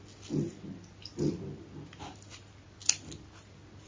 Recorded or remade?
recorded